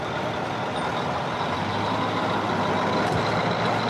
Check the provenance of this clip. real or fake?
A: real